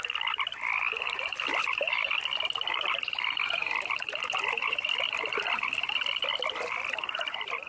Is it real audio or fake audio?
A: real